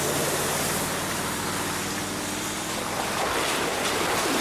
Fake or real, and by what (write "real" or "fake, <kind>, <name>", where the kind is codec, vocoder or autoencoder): real